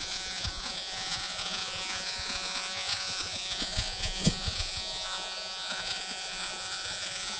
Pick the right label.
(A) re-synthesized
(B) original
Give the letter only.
A